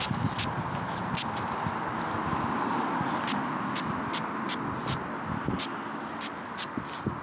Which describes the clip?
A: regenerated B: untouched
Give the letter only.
B